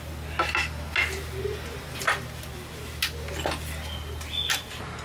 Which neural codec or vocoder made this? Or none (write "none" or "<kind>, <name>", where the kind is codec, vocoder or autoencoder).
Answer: none